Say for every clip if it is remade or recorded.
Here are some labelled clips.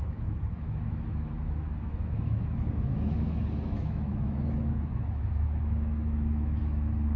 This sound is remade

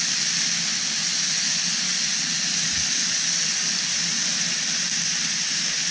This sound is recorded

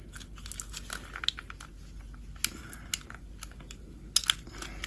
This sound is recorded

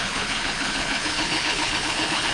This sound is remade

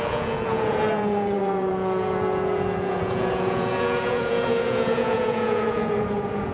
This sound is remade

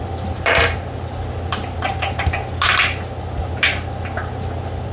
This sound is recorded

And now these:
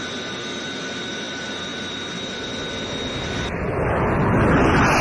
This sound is recorded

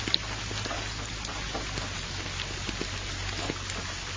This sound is recorded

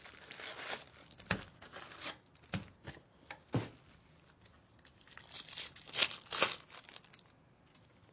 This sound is recorded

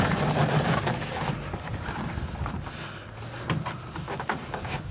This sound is recorded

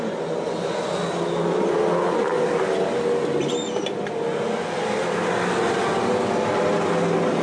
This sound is recorded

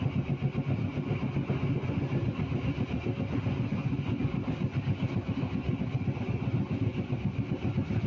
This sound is recorded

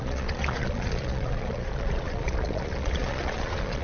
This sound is remade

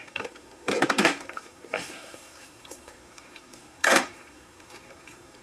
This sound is remade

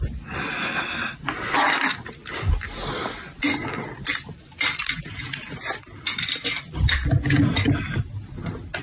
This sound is recorded